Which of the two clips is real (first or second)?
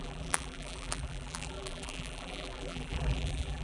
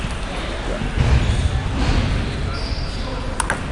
second